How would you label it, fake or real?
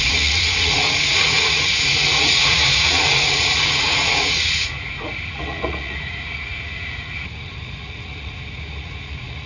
fake